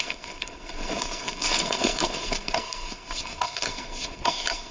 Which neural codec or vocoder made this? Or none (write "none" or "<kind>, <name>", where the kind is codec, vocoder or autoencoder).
codec, SNAC